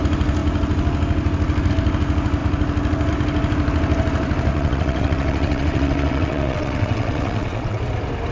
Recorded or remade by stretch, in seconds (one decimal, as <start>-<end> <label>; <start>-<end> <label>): 0.0-4.5 recorded; 4.5-7.8 remade; 7.8-8.3 recorded